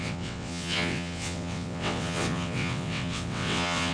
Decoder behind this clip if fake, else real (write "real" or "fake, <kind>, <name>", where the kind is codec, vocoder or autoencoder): fake, vocoder, WaveNeXt